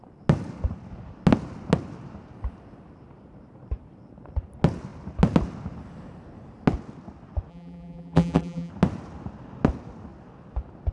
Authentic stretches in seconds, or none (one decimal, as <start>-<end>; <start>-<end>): 0.0-7.5; 8.7-10.9